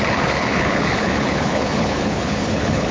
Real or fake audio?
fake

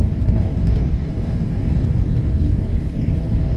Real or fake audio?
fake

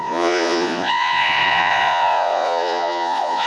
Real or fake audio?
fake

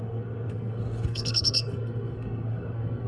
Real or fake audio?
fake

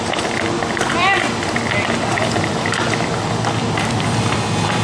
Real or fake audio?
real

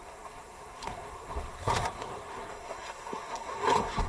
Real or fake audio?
fake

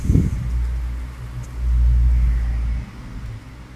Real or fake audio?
real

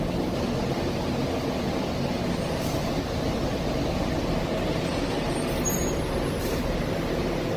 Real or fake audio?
real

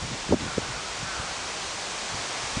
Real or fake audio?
real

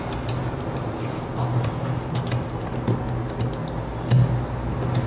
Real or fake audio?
real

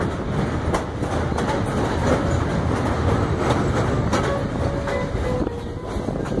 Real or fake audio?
real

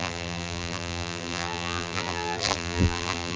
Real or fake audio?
fake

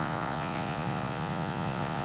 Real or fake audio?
fake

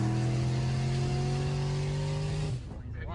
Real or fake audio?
real